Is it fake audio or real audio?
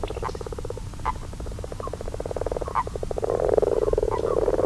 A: real